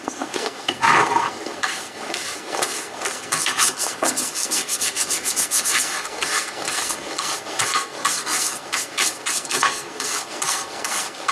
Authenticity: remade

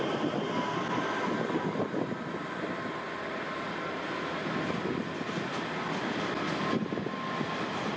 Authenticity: recorded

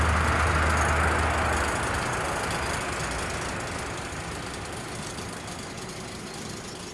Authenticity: recorded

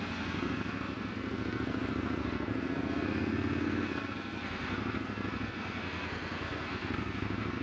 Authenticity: remade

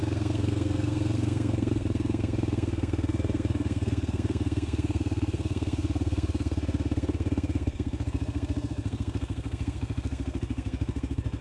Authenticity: remade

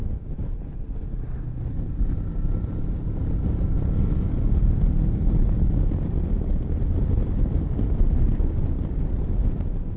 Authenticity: recorded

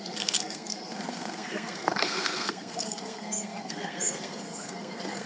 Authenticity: remade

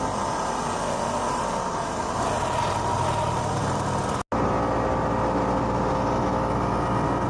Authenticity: recorded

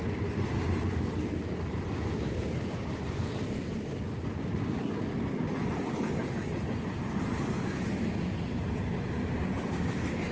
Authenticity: recorded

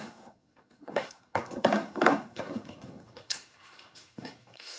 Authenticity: remade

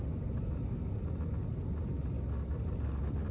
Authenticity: recorded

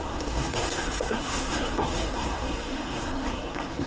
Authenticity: remade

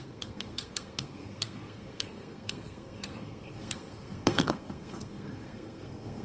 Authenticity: remade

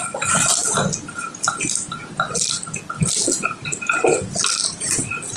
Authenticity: recorded